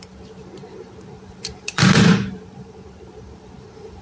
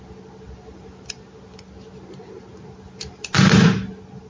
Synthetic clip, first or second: first